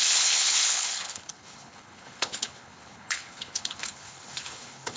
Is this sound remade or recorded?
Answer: remade